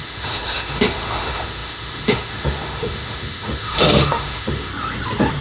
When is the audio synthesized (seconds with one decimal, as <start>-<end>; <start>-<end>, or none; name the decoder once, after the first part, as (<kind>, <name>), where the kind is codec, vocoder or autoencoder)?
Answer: 0.0-4.7 (autoencoder, DAC-VAE)